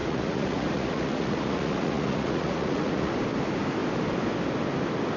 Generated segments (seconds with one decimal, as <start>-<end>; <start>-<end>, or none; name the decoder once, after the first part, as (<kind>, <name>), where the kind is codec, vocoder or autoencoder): 0.0-3.1 (vocoder, Vocos)